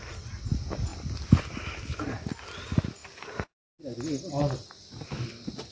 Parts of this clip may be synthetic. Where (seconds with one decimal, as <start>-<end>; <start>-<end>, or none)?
none